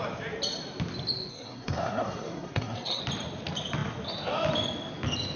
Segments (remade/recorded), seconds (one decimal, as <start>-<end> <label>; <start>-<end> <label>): 0.0-1.3 recorded; 1.3-3.0 remade; 3.0-5.4 recorded